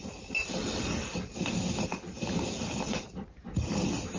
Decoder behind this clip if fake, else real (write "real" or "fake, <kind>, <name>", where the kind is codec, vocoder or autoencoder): real